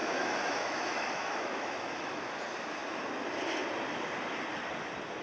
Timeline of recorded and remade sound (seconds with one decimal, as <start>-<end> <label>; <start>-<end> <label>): 0.0-2.2 remade; 2.2-5.2 recorded